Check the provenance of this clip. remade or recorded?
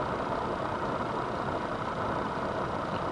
recorded